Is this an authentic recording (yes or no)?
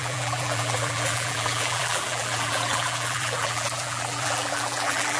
no